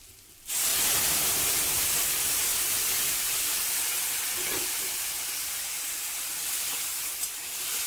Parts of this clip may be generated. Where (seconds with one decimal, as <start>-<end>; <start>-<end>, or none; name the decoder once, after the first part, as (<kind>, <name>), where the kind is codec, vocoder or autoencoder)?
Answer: none